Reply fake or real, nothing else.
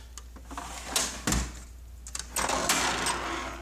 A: real